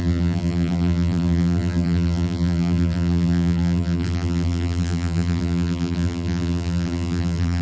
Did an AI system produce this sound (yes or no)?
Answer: yes